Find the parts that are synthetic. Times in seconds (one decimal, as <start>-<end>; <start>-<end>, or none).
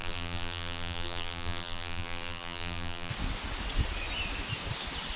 0.0-3.1